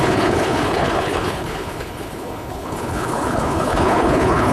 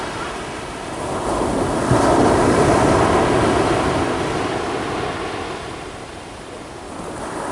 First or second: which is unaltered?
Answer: second